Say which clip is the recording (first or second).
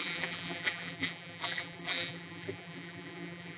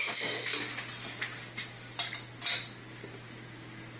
second